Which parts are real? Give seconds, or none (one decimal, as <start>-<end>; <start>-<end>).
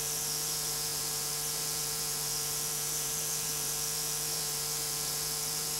none